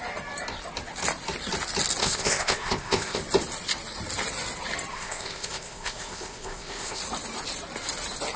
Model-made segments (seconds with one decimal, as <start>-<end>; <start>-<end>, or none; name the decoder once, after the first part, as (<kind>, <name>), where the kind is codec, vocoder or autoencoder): 2.0-3.2 (codec, ZipCodec); 4.9-7.0